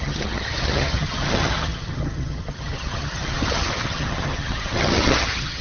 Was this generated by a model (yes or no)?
yes